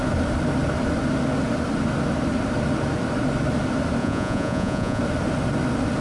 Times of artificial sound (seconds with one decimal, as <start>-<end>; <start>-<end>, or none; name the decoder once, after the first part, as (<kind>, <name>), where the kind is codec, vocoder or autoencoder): 4.0-5.0 (vocoder, Vocos)